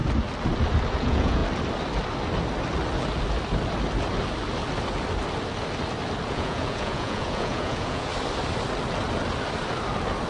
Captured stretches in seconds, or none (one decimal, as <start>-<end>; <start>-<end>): 0.0-0.9; 1.4-6.3; 8.1-10.3